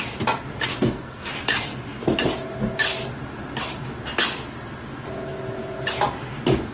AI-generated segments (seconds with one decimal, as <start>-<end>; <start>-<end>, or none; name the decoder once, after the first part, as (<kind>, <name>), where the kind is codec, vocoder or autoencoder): 0.7-1.3 (codec, SNAC)

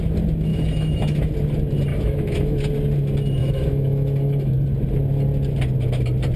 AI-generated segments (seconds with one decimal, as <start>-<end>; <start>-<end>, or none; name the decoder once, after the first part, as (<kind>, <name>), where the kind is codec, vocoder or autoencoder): 0.5-1.3 (autoencoder, DAC-VAE); 1.9-2.7; 3.4-4.6

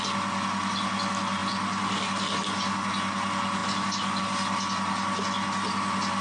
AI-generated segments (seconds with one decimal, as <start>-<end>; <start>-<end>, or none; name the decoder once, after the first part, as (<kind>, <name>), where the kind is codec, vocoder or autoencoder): 1.4-2.3 (vocoder, BigVGAN v2)

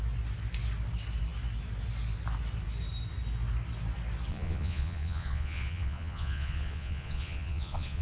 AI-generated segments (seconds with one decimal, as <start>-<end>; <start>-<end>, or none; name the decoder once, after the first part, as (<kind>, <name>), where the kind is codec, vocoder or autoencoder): 4.3-8.0 (vocoder, Vocos)